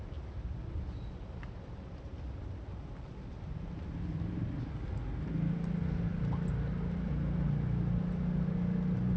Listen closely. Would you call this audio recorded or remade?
recorded